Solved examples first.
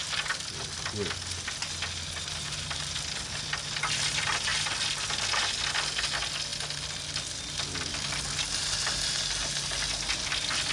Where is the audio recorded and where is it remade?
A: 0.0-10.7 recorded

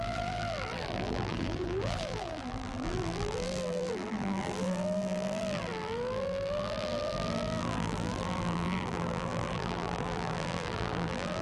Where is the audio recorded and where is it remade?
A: 0.0-11.4 remade